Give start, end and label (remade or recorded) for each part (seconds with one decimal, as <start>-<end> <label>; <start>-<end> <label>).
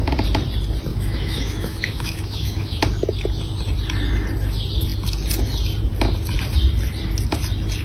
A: 0.0-0.9 recorded; 0.9-2.8 remade; 2.8-7.8 recorded